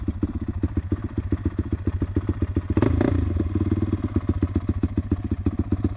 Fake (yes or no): no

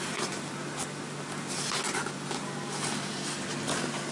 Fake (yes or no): no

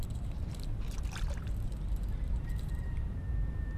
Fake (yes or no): yes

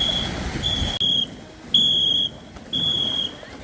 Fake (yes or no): no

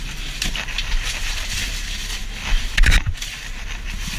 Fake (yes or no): yes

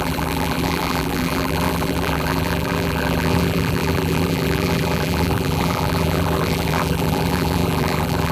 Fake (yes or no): yes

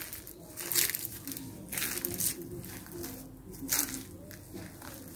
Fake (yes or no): no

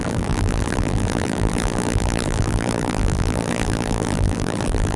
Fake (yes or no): yes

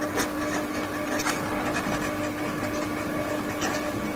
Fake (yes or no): no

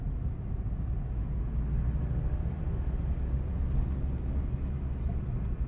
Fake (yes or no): no